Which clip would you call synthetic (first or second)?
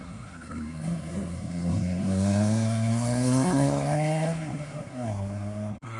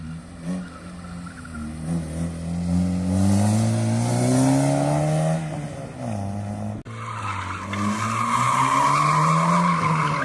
first